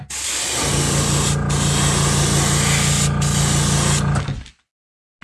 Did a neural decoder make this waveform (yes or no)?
no